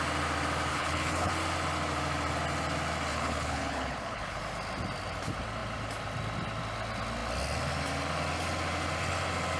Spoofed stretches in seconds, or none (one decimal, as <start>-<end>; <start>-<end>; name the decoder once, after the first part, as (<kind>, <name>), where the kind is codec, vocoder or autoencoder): 0.7-1.3 (codec, HILCodec); 3.1-4.4